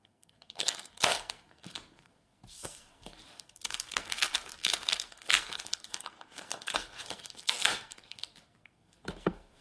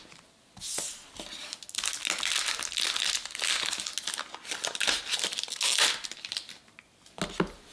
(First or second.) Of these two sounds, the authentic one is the second